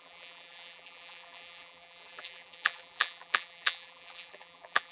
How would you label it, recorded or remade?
remade